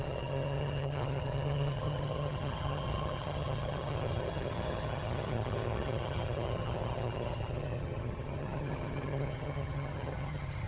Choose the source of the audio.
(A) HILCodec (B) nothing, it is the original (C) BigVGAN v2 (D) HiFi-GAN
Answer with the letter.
D